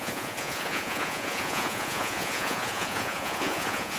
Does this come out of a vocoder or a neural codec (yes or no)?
yes